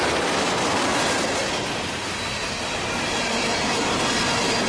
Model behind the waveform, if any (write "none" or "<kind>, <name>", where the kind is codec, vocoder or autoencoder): none